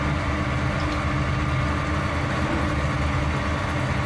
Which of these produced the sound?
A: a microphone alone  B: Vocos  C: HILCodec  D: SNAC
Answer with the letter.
A